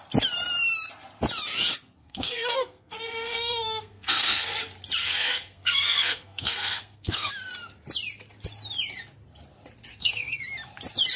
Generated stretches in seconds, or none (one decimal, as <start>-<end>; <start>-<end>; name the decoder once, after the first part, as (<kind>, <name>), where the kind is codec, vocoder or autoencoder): 2.0-4.6 (codec, SNAC); 5.0-7.3; 9.9-10.4